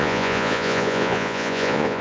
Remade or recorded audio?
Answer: remade